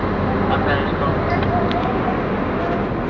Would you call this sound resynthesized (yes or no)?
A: no